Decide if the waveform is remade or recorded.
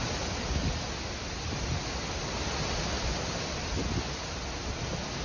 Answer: recorded